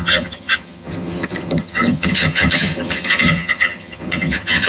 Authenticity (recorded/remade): remade